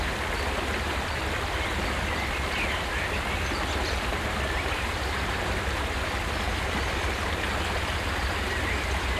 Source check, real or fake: real